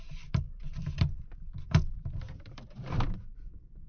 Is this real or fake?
fake